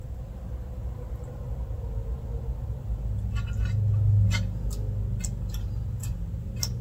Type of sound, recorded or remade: recorded